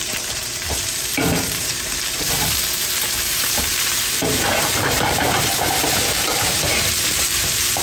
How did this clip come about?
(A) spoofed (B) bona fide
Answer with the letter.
A